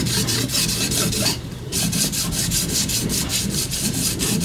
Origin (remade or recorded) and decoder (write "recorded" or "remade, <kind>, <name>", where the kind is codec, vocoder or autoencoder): remade, vocoder, BigVGAN v2